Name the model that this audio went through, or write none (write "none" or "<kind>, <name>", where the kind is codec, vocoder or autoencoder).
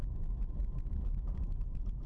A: none